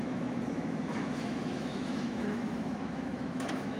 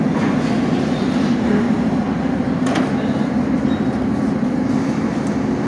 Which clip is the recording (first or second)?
second